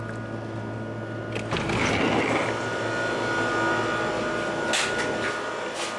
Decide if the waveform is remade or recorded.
recorded